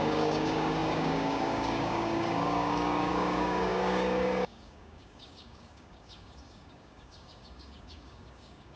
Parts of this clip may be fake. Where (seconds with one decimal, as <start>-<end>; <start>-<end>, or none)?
0.0-8.8